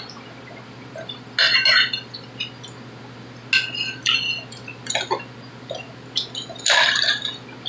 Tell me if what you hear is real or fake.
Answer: real